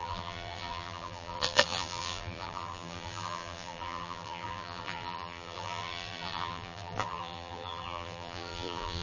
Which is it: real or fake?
fake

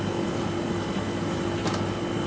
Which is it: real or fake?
real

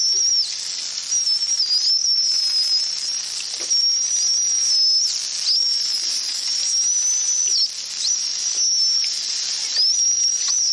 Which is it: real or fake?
real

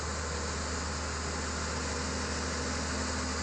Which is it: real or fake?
real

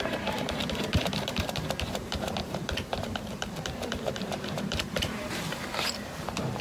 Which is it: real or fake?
fake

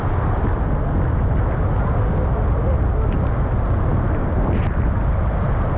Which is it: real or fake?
real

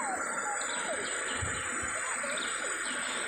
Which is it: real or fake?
real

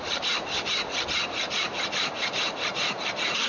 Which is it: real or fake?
fake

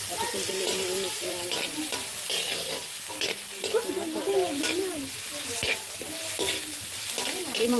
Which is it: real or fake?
fake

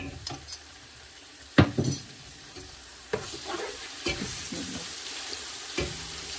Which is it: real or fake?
fake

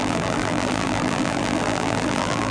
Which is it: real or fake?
fake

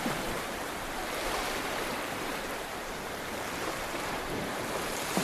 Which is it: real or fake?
fake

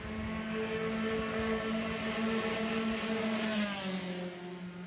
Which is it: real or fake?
real